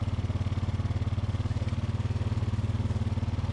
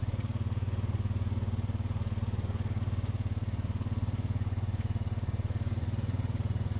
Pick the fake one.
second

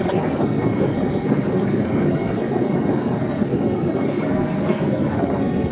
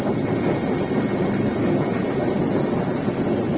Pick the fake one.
first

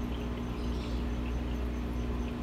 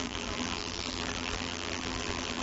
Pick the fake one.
second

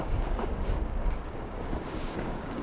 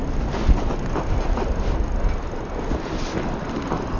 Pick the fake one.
first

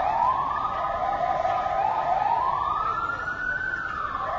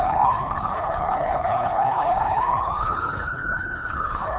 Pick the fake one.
second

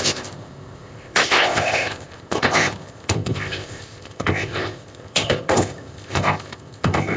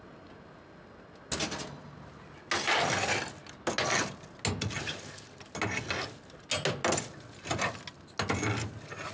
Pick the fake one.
first